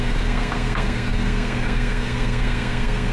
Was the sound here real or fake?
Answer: fake